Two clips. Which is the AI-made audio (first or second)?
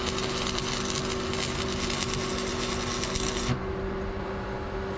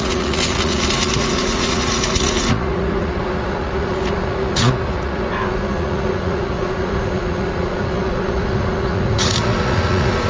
second